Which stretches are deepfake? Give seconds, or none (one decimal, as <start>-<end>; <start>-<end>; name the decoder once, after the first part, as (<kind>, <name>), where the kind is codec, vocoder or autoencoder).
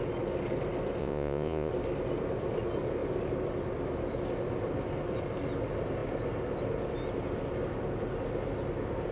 1.0-1.7 (vocoder, Vocos)